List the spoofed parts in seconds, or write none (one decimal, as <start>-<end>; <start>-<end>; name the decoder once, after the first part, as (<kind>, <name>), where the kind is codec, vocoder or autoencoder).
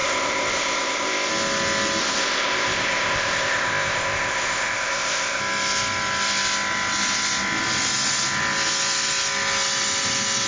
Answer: 0.0-1.3 (codec, ZipCodec); 2.0-5.4